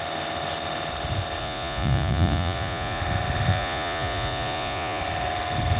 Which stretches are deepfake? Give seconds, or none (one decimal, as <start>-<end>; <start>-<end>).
1.4-3.0; 3.5-5.0